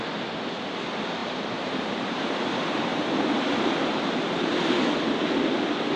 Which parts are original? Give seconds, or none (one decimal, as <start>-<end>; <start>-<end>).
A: 0.0-1.2; 4.5-6.0